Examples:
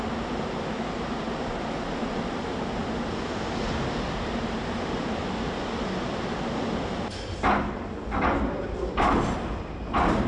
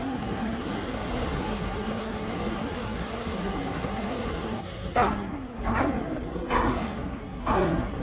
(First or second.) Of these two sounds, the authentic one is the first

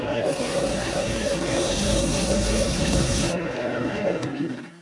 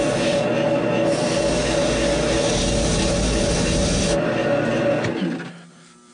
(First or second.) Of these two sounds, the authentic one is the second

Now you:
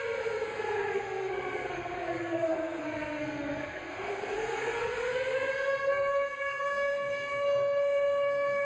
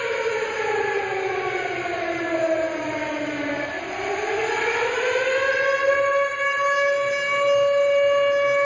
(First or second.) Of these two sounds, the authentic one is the second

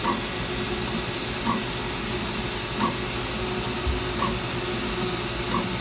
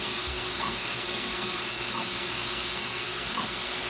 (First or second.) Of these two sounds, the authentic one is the first